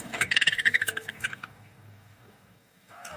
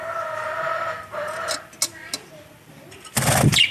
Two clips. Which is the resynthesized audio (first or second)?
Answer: first